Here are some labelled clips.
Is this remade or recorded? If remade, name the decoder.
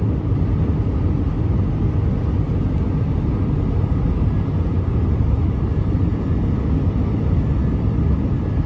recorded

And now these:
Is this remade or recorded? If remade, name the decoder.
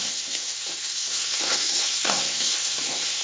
remade, codec, SNAC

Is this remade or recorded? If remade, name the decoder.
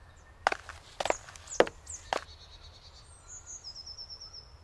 recorded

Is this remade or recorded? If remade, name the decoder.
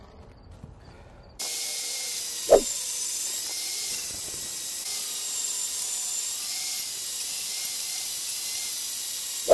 remade, vocoder, BigVGAN v2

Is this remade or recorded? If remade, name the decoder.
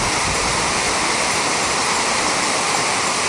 remade, vocoder, BigVGAN v2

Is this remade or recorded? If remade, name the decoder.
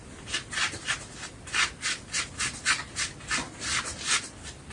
recorded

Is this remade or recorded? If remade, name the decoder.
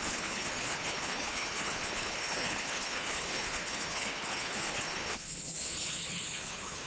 remade, codec, HILCodec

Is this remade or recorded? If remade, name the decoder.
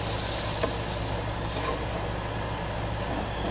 recorded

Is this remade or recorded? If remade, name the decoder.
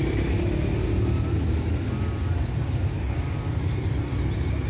recorded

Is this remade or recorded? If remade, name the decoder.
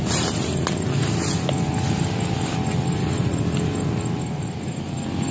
recorded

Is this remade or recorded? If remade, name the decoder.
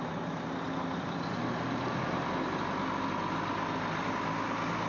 recorded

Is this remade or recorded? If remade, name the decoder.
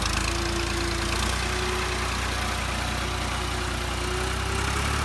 recorded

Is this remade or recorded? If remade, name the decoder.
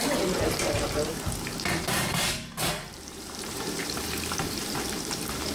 remade, vocoder, BigVGAN v2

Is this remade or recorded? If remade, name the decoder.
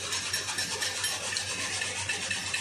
recorded